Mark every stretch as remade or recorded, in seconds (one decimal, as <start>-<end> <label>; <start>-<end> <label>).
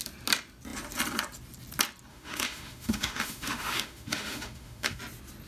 0.0-2.1 recorded; 2.1-5.0 remade; 5.0-5.5 recorded